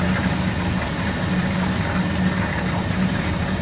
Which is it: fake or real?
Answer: real